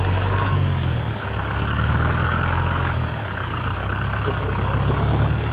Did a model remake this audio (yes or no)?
yes